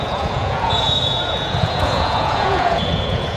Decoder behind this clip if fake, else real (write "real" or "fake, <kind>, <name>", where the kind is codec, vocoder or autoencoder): fake, vocoder, Vocos